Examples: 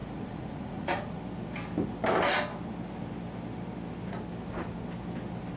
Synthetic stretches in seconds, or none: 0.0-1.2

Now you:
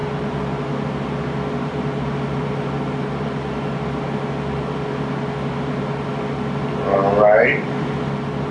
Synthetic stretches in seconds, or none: none